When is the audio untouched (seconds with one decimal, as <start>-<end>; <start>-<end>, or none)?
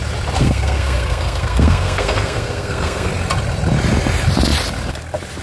0.0-0.4; 3.1-5.4